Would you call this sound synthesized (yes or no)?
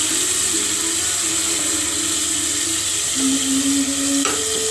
no